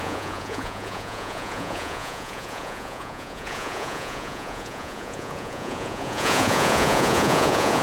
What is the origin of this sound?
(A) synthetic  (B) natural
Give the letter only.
A